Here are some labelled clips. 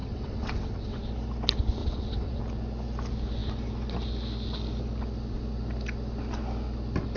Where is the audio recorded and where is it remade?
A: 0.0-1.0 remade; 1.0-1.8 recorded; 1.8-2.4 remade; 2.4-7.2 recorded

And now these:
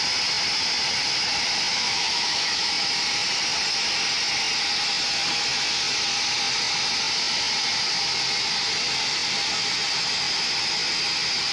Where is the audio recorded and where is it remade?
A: 0.0-1.7 recorded; 1.7-2.7 remade; 2.7-11.5 recorded

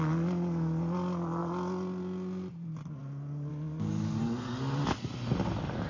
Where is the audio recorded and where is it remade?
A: 0.0-3.5 recorded; 3.5-4.2 remade; 4.2-5.9 recorded

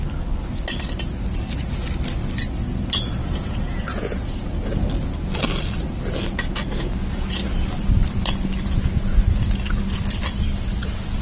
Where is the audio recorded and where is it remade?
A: 0.0-3.2 recorded; 3.2-4.6 remade; 4.6-11.2 recorded